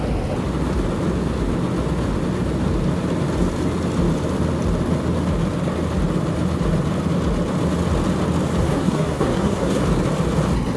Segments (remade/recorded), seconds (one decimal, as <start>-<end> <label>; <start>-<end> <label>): 0.0-8.6 recorded; 8.6-9.8 remade; 9.8-10.8 recorded